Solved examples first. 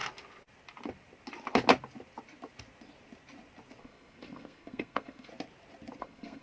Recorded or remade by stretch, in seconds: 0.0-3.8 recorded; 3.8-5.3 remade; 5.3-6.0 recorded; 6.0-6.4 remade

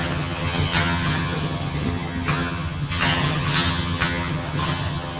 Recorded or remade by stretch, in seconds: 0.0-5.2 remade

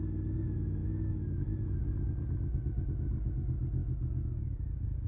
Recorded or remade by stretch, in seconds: 0.0-0.8 recorded; 0.8-1.8 remade; 1.8-5.1 recorded

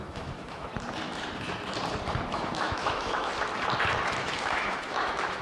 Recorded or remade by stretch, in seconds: 0.0-0.7 remade; 0.7-2.3 recorded; 2.3-3.3 remade; 3.3-4.2 recorded; 4.2-5.4 remade

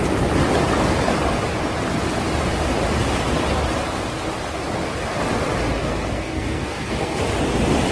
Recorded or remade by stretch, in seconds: 0.0-5.8 recorded; 5.8-7.2 remade; 7.2-7.9 recorded

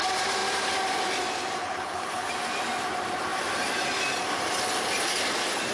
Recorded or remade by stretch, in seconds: 0.0-1.6 recorded; 1.6-2.3 remade; 2.3-5.7 recorded

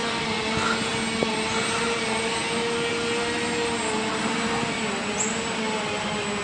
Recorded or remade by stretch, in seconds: 0.0-0.9 remade; 0.9-1.8 recorded; 1.8-2.4 remade; 2.4-2.9 recorded; 2.9-6.4 remade